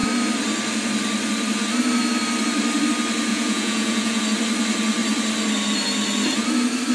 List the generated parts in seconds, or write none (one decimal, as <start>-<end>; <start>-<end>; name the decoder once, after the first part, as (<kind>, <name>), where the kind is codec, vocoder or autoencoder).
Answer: 3.3-4.2 (vocoder, Vocos)